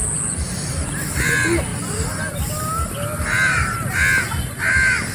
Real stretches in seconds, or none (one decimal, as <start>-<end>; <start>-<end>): 0.0-1.0; 1.7-4.2